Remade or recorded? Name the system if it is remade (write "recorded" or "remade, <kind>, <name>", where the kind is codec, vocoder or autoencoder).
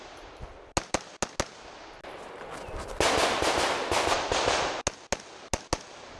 recorded